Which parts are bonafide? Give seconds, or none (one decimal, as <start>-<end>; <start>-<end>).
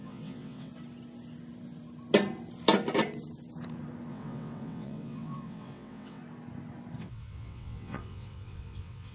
0.7-4.1; 6.2-7.0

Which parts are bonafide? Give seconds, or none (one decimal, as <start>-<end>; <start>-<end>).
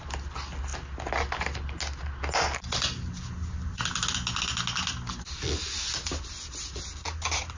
0.0-7.6